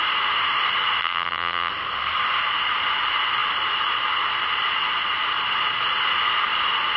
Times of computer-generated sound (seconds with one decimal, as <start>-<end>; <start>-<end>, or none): 1.0-1.7